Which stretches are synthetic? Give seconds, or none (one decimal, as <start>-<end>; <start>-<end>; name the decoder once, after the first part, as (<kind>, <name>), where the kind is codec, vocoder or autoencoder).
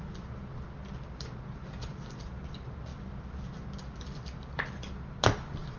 none